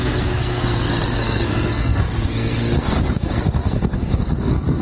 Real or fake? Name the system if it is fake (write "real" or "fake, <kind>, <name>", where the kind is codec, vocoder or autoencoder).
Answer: fake, codec, SNAC